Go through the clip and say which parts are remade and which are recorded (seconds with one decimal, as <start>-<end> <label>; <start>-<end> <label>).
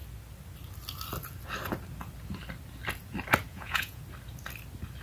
0.0-3.5 recorded; 3.5-4.0 remade; 4.0-5.0 recorded